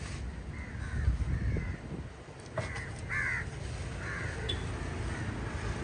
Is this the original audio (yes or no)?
yes